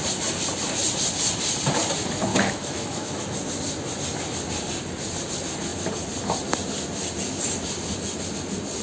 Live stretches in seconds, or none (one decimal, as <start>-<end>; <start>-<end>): 0.0-2.3; 3.2-8.8